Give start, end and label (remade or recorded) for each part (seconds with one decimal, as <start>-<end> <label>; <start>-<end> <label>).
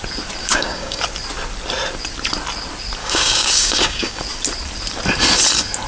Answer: 0.0-0.4 recorded; 0.4-1.0 remade; 1.0-3.0 recorded; 3.0-4.2 remade; 4.2-5.9 recorded